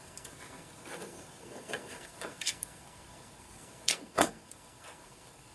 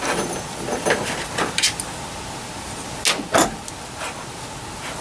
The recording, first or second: second